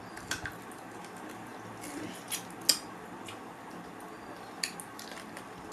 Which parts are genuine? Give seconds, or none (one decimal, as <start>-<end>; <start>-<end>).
0.0-5.7